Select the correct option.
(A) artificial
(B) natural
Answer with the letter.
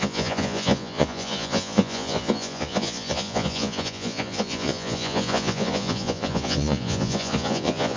A